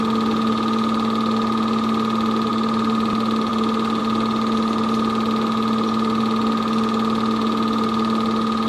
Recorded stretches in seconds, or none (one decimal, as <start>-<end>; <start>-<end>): 0.0-8.7